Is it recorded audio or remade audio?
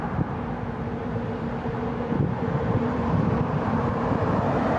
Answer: remade